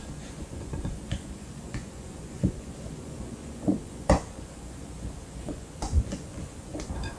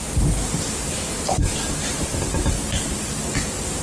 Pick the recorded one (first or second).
second